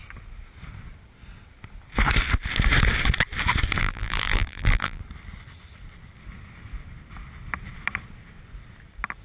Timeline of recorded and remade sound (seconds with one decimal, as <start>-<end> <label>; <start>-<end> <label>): 0.0-3.8 recorded; 3.8-5.0 remade; 5.0-9.2 recorded